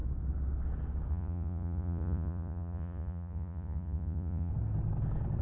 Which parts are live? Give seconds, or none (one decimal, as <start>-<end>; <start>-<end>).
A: 0.0-1.1; 4.5-5.4